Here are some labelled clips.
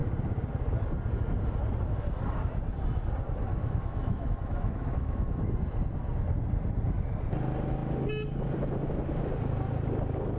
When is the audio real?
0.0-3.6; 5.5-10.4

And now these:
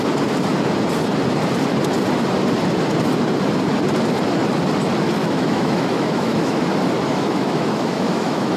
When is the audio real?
0.0-5.2; 6.6-7.1

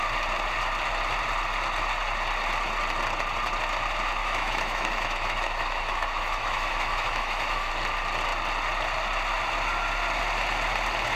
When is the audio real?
0.0-4.2; 7.7-11.2

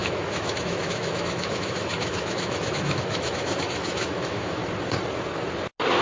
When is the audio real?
4.6-6.0